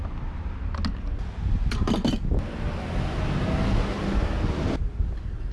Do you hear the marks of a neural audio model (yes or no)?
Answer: no